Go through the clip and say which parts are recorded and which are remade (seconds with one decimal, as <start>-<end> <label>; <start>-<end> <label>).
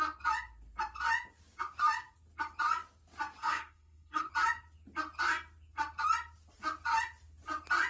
0.0-3.4 recorded; 3.4-4.3 remade; 4.3-7.9 recorded